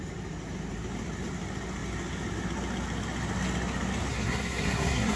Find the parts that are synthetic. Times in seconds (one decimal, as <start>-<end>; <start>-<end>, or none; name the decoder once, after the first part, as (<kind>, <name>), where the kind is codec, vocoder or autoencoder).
4.1-5.2 (codec, SNAC)